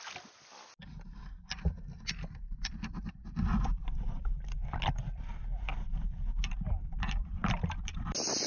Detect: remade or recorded recorded